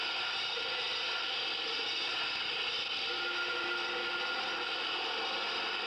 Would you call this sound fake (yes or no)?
no